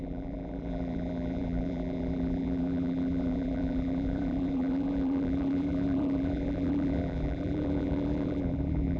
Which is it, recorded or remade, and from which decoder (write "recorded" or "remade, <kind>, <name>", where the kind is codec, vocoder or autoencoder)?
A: remade, vocoder, BigVGAN v2